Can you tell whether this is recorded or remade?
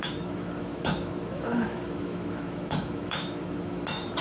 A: remade